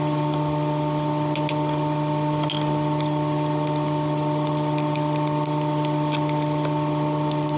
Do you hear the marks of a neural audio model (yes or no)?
no